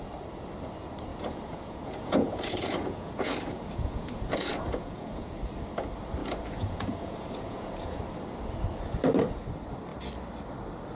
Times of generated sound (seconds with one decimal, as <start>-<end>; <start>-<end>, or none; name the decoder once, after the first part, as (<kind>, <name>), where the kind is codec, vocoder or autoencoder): 1.1-5.3 (vocoder, Vocos); 6.2-8.0